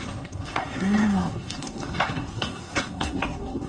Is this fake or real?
fake